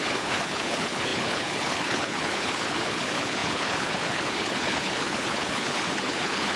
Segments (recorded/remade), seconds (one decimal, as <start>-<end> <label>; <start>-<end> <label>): 0.0-6.6 remade